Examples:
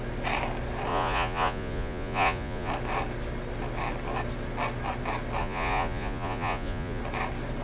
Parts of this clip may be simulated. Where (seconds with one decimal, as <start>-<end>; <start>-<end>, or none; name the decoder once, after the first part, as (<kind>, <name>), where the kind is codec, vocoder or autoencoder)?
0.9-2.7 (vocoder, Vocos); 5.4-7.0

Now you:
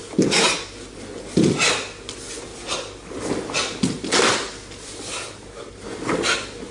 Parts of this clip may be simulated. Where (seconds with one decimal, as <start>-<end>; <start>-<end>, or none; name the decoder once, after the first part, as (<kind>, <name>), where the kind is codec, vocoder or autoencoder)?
none

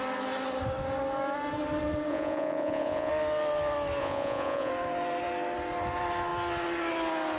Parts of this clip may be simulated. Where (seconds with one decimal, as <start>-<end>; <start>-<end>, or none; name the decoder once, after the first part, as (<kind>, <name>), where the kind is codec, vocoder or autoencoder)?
2.1-3.1 (vocoder, Vocos); 4.0-4.7

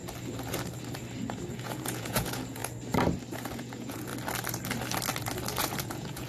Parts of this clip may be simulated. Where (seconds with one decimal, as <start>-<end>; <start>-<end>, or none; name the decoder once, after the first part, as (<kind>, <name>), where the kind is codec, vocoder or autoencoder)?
1.5-2.6 (vocoder, Vocos); 3.5-4.1; 5.6-6.3